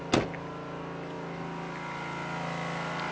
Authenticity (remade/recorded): recorded